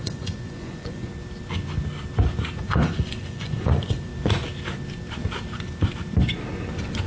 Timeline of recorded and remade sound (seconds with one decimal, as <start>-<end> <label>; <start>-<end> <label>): 0.0-1.1 remade; 1.1-2.6 recorded; 2.6-4.1 remade; 4.1-7.1 recorded